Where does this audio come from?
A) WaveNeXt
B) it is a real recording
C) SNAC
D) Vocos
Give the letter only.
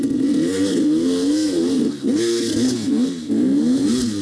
C